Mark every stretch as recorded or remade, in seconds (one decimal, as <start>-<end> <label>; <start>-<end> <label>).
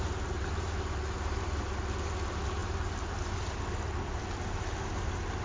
0.0-5.4 recorded